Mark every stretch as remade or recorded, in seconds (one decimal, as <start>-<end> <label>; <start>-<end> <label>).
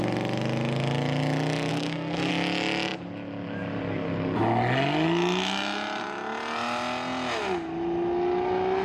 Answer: 0.0-1.7 recorded; 1.7-2.3 remade; 2.3-8.8 recorded